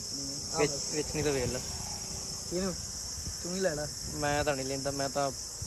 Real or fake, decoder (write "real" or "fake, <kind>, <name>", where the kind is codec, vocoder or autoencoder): real